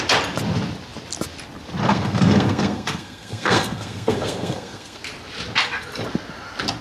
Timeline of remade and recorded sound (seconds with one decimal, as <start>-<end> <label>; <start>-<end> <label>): 0.0-1.9 recorded; 1.9-5.0 remade; 5.0-6.8 recorded